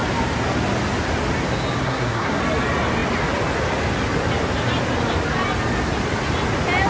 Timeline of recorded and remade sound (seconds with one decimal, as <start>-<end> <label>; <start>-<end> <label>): 0.0-1.8 recorded; 1.8-2.4 remade; 2.4-6.9 recorded